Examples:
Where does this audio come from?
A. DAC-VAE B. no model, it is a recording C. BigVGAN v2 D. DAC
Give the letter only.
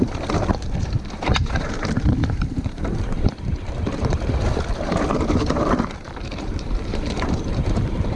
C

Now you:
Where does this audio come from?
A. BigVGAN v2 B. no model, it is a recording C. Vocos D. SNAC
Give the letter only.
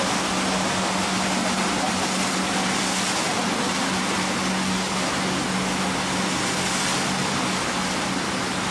B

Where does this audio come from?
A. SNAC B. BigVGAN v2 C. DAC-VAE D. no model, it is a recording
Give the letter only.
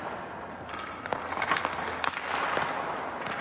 D